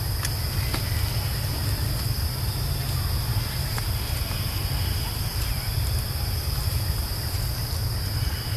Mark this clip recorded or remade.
recorded